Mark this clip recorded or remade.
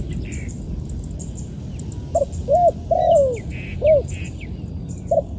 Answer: recorded